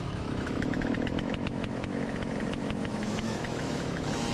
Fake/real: fake